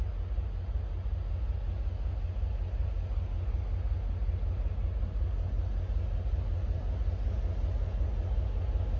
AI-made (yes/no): no